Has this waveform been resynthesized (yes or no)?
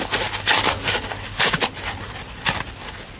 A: no